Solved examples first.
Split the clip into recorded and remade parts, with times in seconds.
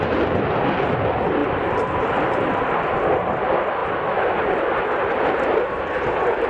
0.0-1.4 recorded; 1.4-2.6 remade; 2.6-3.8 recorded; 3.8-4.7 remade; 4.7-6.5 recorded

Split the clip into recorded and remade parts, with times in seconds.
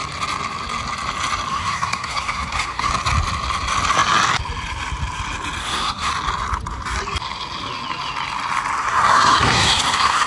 0.0-1.5 recorded; 1.5-2.9 remade; 2.9-5.6 recorded; 5.6-6.1 remade; 6.1-8.8 recorded; 8.8-10.3 remade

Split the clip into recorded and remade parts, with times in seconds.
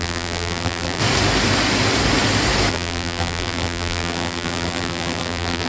0.0-1.0 remade; 1.0-2.7 recorded; 2.7-5.7 remade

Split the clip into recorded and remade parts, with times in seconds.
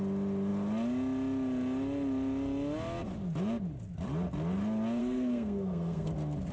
0.0-5.0 recorded; 5.0-6.1 remade; 6.1-6.5 recorded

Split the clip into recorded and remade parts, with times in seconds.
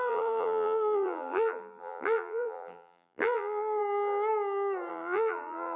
0.0-3.8 remade; 3.8-4.9 recorded; 4.9-5.8 remade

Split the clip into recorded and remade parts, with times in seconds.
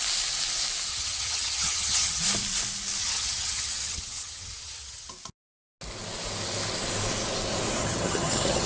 0.0-0.9 recorded; 0.9-2.2 remade; 2.2-3.0 recorded; 3.0-5.1 remade; 5.1-7.8 recorded; 7.8-8.7 remade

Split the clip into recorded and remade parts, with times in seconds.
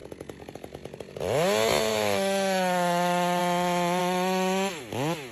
0.0-1.9 recorded; 1.9-3.4 remade; 3.4-4.0 recorded; 4.0-4.8 remade; 4.8-5.3 recorded